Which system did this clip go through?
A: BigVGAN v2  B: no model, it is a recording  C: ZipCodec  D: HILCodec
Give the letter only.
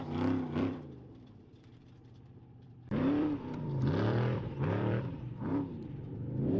A